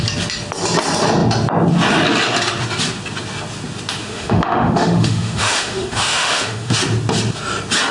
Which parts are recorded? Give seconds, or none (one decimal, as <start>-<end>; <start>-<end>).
0.0-4.0; 6.8-7.9